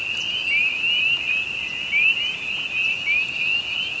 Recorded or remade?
recorded